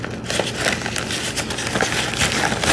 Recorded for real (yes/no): yes